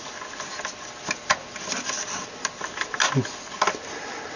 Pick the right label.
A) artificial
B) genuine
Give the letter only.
B